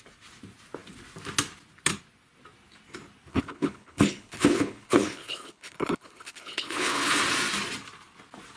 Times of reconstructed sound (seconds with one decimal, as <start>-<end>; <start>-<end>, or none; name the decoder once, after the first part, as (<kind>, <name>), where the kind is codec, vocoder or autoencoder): 3.3-7.2 (codec, HILCodec)